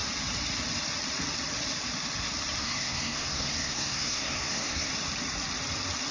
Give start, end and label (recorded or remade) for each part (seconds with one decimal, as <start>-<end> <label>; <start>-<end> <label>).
0.0-2.6 recorded; 2.6-4.9 remade; 4.9-6.1 recorded